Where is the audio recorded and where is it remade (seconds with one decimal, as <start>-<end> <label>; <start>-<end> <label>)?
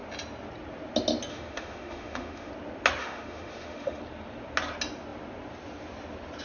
0.0-1.3 recorded; 1.3-2.5 remade; 2.5-3.0 recorded; 3.0-4.0 remade; 4.0-6.4 recorded